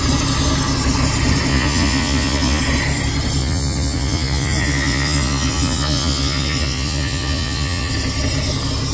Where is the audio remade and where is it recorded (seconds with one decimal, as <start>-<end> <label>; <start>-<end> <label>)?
0.0-1.5 recorded; 1.5-2.6 remade; 2.6-3.4 recorded; 3.4-7.9 remade; 7.9-8.9 recorded